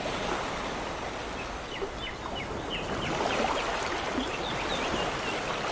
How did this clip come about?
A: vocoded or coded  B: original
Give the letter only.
B